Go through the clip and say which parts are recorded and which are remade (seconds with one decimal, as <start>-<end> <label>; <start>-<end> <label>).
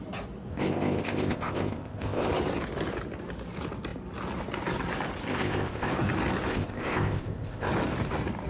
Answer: 0.0-0.5 recorded; 0.5-2.3 remade; 2.3-5.3 recorded; 5.3-5.9 remade; 5.9-6.5 recorded; 6.5-7.7 remade; 7.7-8.5 recorded